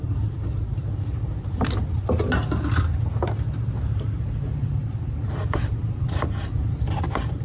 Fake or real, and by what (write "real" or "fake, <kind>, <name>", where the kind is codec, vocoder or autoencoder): fake, vocoder, BigVGAN v2